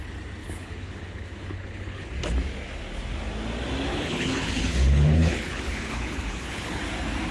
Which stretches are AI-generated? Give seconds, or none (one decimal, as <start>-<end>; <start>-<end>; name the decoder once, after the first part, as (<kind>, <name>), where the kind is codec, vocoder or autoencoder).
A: 0.4-2.1 (codec, HILCodec); 3.9-6.8